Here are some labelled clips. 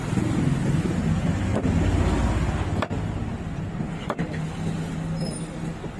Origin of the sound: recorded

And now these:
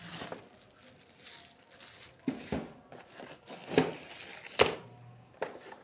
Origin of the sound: recorded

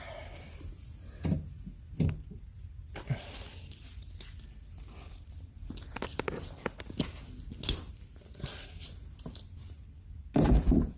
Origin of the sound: recorded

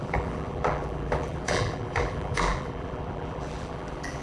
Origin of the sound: remade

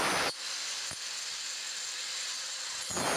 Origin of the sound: recorded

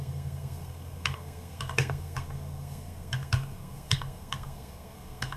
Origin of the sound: remade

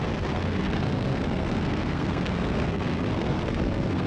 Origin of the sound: remade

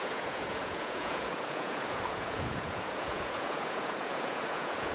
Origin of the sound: remade